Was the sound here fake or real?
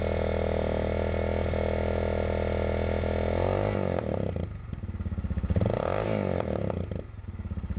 real